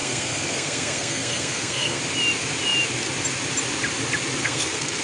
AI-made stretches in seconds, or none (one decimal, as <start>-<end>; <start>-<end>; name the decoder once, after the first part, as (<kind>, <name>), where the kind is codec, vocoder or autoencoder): 0.0-2.0 (codec, SNAC); 4.4-5.0